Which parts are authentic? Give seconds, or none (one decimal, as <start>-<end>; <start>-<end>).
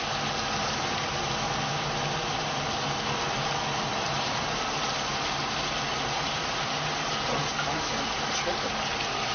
0.0-0.6; 1.3-3.9; 5.1-5.9; 7.4-9.3